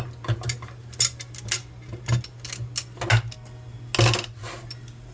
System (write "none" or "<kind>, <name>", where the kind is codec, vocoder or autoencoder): none